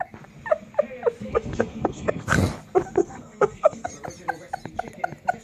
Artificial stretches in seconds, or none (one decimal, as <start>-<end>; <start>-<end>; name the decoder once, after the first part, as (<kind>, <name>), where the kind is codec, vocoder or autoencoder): 1.2-2.3 (codec, SNAC); 3.0-3.9